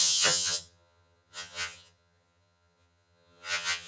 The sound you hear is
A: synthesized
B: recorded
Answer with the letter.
A